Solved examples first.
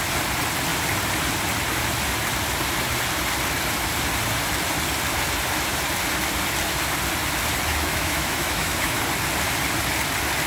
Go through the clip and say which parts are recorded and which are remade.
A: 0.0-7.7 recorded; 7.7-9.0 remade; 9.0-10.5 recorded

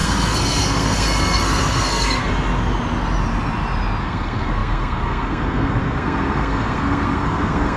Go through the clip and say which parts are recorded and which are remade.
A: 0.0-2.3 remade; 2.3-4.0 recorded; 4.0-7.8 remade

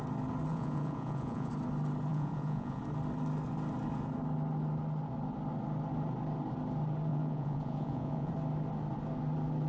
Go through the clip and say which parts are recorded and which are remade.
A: 0.0-0.5 recorded; 0.5-1.5 remade; 1.5-2.1 recorded; 2.1-2.8 remade; 2.8-7.1 recorded; 7.1-8.3 remade; 8.3-9.7 recorded

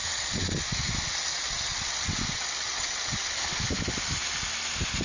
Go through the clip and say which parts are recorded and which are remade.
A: 0.0-0.8 remade; 0.8-1.3 recorded; 1.3-3.2 remade; 3.2-5.0 recorded

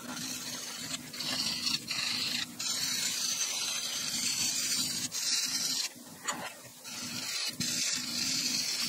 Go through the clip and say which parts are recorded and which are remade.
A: 0.0-6.7 remade; 6.7-7.8 recorded; 7.8-8.9 remade

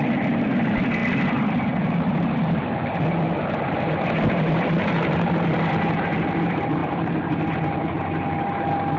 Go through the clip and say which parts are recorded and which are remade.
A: 0.0-9.0 recorded

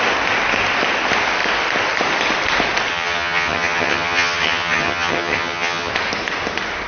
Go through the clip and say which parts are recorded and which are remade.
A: 0.0-2.9 recorded; 2.9-5.9 remade; 5.9-6.9 recorded

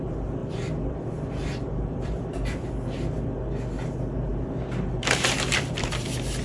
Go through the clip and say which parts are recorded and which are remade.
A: 0.0-0.4 recorded; 0.4-2.7 remade; 2.7-4.3 recorded; 4.3-6.4 remade